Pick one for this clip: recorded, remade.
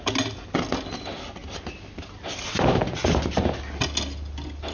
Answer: recorded